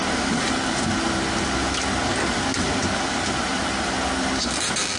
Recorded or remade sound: recorded